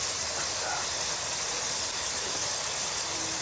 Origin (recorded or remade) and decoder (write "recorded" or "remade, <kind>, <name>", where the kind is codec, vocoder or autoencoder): recorded